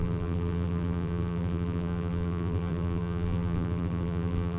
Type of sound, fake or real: fake